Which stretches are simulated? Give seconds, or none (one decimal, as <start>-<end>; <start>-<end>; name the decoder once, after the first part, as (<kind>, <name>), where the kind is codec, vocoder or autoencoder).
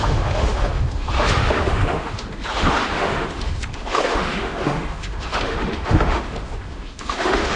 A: 0.0-7.6 (autoencoder, DAC-VAE)